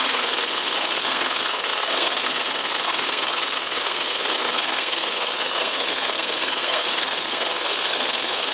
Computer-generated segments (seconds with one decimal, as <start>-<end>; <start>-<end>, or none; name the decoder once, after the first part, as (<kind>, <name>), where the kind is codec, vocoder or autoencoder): 0.0-8.5 (codec, SNAC)